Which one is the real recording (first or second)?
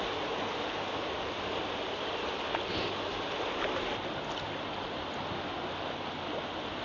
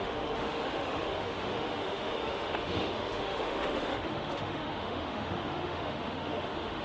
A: first